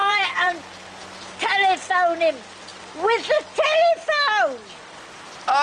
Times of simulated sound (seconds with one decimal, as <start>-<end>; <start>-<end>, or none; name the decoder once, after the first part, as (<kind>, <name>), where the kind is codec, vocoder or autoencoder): 0.0-0.6 (vocoder, BigVGAN v2)